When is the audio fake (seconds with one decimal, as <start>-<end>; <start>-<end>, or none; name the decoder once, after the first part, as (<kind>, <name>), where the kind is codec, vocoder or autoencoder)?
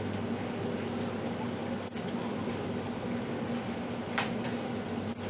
none